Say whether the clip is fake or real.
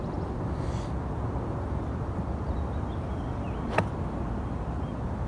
real